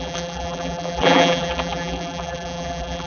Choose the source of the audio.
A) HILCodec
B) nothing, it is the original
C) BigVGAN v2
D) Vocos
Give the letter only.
C